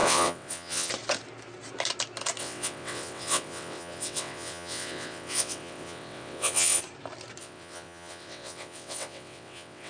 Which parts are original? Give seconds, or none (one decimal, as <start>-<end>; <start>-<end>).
0.9-2.4; 6.8-7.4